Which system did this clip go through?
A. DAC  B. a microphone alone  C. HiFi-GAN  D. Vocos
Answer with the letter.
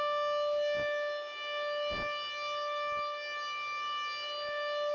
B